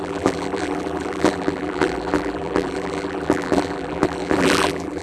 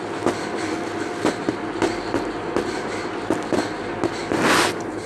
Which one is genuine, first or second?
second